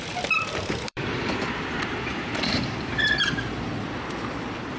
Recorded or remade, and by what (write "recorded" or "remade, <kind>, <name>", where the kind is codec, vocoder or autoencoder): remade, vocoder, BigVGAN v2